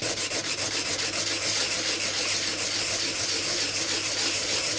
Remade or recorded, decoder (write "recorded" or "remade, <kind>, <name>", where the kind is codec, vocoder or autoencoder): remade, vocoder, BigVGAN v2